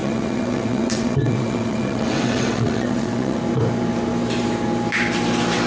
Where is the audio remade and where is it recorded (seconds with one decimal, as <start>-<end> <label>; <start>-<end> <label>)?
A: 0.0-3.4 remade; 3.4-5.7 recorded